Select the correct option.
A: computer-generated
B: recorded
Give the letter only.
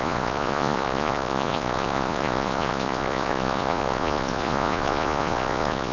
A